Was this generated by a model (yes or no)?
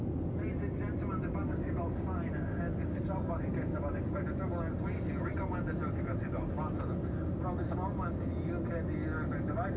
no